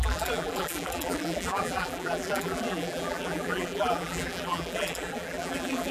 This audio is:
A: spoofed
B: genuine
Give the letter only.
A